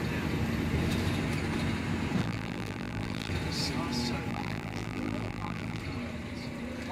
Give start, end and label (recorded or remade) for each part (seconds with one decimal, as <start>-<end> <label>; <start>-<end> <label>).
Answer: 0.0-2.2 recorded; 2.2-3.3 remade; 3.3-4.3 recorded; 4.3-5.8 remade; 5.8-6.9 recorded